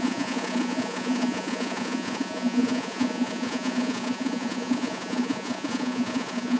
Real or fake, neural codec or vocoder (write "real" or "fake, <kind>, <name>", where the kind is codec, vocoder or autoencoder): fake, vocoder, Vocos